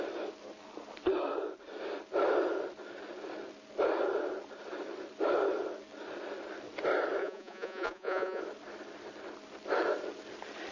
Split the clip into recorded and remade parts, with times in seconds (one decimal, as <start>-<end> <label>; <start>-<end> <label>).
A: 0.0-7.2 recorded; 7.2-8.4 remade; 8.4-10.7 recorded